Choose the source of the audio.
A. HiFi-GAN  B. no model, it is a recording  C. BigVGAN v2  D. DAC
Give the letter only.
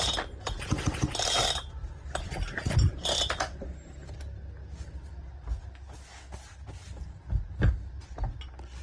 B